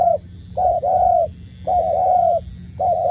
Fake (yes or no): no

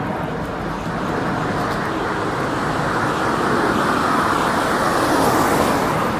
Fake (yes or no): no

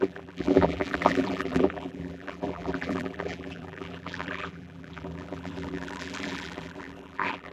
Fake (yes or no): yes